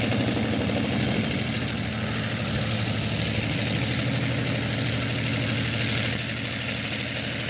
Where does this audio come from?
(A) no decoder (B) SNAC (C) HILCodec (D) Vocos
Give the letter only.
A